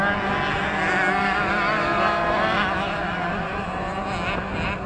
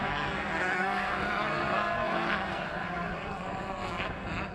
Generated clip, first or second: second